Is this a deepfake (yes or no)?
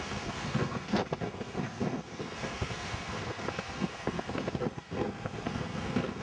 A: yes